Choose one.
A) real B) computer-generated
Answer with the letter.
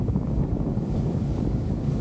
B